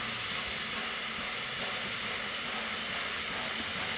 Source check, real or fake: real